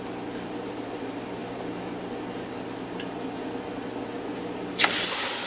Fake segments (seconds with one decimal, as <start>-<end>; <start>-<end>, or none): none